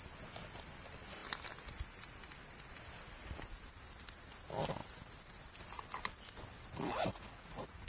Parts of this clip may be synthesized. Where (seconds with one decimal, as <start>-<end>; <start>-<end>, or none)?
7.0-7.9